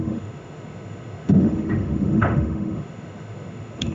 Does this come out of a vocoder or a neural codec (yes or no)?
yes